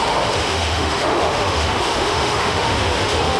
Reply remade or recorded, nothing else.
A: remade